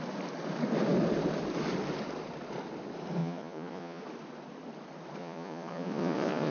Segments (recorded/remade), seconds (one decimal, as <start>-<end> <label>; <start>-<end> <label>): 0.0-3.2 recorded; 3.2-4.0 remade; 4.0-5.2 recorded; 5.2-6.5 remade